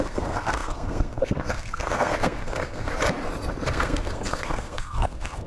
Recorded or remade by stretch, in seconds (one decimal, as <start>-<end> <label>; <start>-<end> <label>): 0.0-2.9 remade; 2.9-3.7 recorded; 3.7-5.5 remade